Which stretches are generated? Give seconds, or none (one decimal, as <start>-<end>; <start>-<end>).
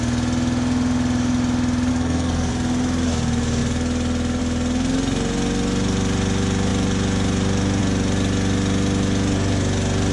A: 1.9-2.5